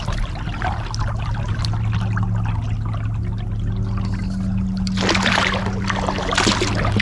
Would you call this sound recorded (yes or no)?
yes